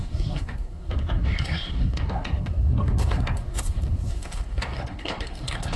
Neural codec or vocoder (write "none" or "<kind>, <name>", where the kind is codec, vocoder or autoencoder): codec, SNAC